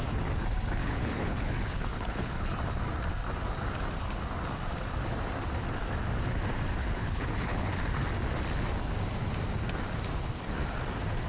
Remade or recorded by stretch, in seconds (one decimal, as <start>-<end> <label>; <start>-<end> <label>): 0.0-0.8 recorded; 0.8-2.5 remade; 2.5-6.8 recorded; 6.8-7.7 remade; 7.7-11.3 recorded